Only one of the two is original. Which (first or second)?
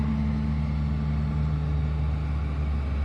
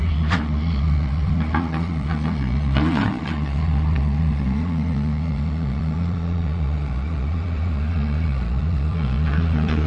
first